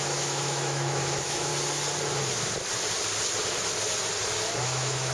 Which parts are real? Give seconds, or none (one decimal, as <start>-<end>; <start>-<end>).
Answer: 1.5-4.6